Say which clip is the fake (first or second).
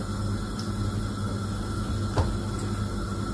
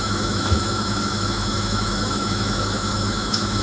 second